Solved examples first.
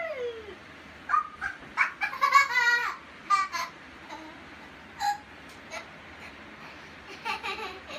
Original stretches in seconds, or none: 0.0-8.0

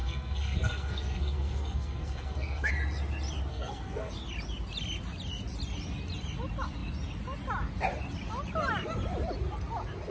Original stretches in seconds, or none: 2.7-3.5; 4.1-10.1

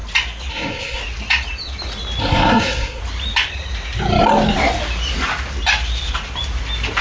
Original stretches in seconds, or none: 0.0-0.5; 1.0-2.2; 3.0-7.0